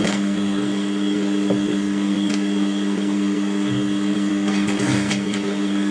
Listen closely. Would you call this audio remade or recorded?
remade